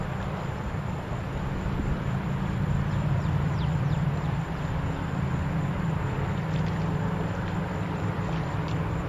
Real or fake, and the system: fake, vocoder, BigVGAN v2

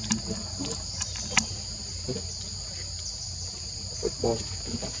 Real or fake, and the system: real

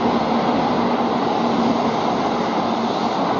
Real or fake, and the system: real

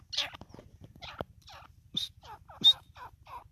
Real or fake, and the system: real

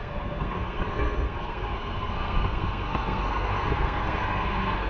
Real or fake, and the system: fake, codec, SNAC